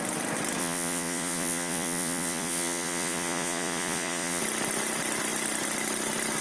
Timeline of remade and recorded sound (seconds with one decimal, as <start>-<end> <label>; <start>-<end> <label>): 0.0-0.6 recorded; 0.6-4.4 remade; 4.4-6.4 recorded